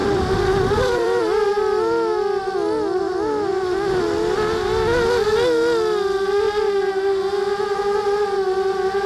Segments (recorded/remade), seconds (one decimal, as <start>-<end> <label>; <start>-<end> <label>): 0.0-1.5 remade; 1.5-9.1 recorded